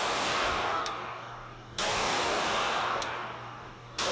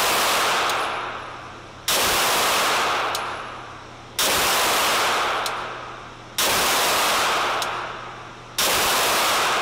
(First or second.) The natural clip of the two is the second